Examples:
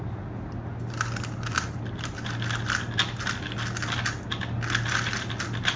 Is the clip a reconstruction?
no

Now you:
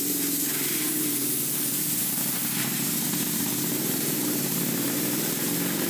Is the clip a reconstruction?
yes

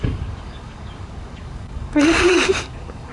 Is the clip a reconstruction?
yes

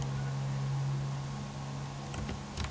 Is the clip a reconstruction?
no